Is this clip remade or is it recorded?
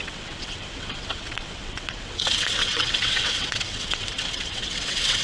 remade